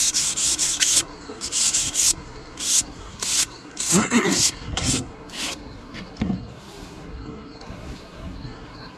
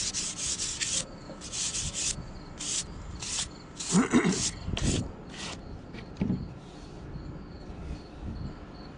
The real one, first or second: second